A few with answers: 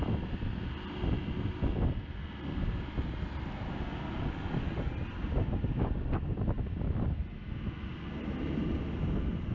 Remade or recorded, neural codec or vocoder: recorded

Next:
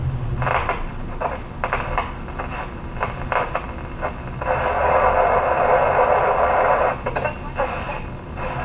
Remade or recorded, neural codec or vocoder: recorded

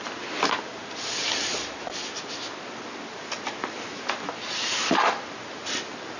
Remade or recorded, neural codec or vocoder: recorded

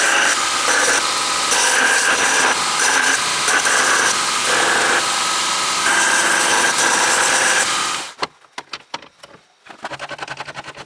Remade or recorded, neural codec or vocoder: recorded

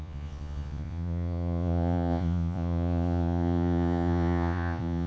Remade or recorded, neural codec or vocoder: remade, vocoder, Vocos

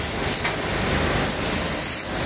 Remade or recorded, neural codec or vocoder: remade, vocoder, BigVGAN v2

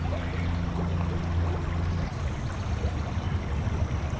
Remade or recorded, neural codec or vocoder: recorded